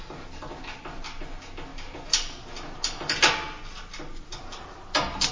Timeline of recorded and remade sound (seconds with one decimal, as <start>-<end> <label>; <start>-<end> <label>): 0.0-5.3 recorded